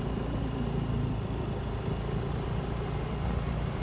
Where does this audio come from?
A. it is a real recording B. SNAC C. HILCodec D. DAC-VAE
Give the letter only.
A